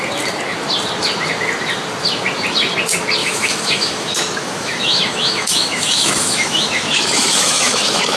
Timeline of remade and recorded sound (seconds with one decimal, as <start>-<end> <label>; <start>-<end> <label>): 0.0-3.2 recorded; 3.2-8.2 remade